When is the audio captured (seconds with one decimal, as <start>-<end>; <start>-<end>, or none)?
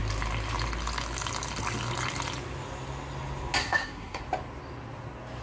0.0-3.6; 4.2-5.4